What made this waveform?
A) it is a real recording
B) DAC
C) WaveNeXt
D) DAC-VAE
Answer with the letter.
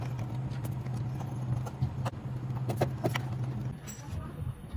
A